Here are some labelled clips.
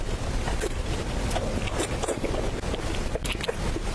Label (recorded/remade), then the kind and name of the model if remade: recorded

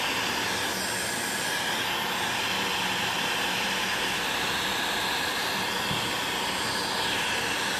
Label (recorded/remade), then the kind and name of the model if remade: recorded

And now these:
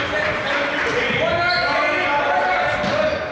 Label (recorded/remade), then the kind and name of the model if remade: recorded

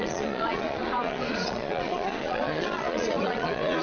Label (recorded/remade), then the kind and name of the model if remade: remade, vocoder, Vocos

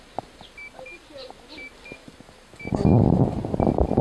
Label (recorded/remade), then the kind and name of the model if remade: recorded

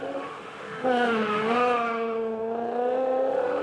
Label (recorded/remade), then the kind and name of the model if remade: remade, autoencoder, DAC-VAE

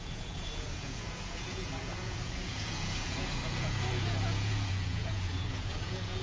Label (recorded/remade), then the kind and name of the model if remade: remade, vocoder, Vocos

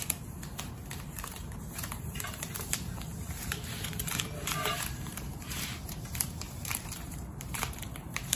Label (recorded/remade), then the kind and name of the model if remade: remade, vocoder, BigVGAN v2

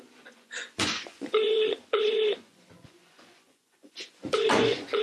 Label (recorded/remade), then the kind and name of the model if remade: remade, vocoder, Vocos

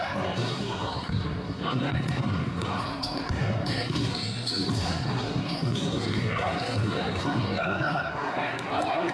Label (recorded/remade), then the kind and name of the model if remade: remade, codec, SNAC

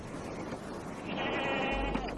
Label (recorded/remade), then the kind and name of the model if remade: recorded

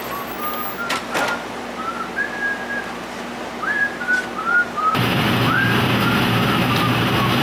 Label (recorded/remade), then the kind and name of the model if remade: recorded